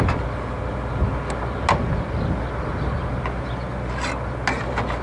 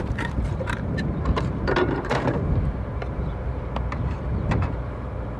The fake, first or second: second